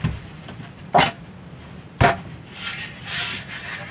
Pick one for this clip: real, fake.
real